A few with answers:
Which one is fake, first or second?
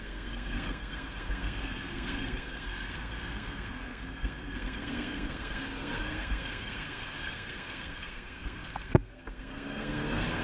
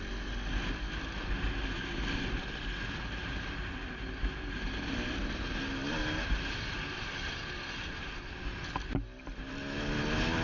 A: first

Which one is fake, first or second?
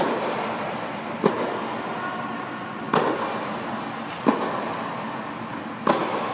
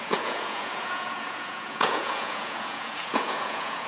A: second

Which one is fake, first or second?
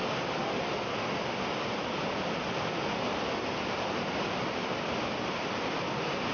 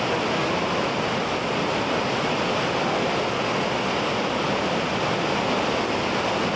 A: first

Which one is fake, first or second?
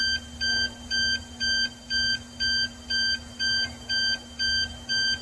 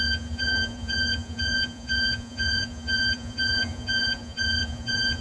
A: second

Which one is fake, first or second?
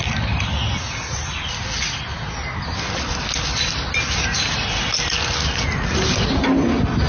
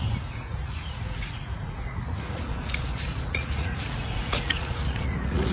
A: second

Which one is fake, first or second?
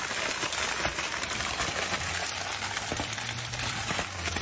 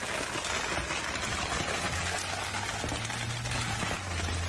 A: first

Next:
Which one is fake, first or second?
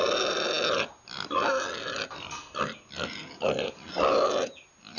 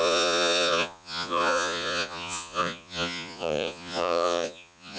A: second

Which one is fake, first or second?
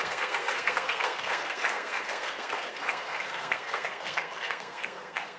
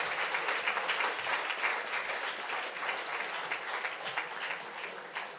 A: first